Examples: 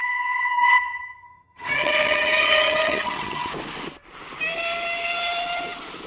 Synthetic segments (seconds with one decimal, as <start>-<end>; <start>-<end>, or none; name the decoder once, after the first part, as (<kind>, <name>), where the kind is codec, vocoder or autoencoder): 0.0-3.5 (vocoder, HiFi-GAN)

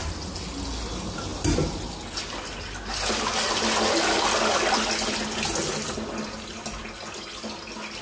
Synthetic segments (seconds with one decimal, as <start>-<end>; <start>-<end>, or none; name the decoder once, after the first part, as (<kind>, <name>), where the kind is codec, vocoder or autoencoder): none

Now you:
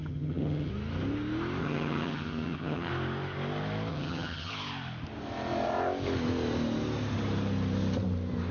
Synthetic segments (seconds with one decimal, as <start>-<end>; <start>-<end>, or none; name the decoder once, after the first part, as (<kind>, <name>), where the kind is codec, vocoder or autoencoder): 0.0-0.7 (vocoder, HiFi-GAN); 1.6-2.9; 3.9-4.5

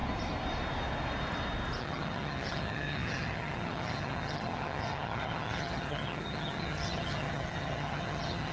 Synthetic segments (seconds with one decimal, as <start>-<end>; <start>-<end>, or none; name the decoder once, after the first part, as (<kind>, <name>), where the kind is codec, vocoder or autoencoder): 1.8-8.5 (vocoder, HiFi-GAN)

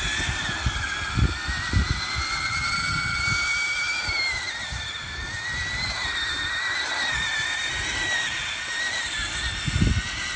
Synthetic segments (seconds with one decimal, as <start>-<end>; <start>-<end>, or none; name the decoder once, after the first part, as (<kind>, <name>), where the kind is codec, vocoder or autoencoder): 2.4-3.2 (vocoder, HiFi-GAN)